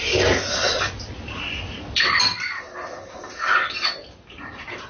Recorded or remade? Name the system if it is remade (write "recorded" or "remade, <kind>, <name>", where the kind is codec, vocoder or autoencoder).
recorded